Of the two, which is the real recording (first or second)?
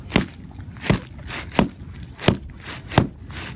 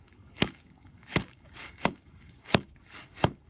first